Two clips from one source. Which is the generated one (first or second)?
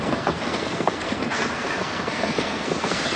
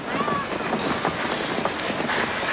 first